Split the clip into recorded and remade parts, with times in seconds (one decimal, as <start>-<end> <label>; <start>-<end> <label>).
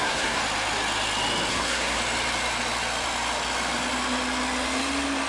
0.0-0.4 remade; 0.4-1.5 recorded; 1.5-2.0 remade; 2.0-5.3 recorded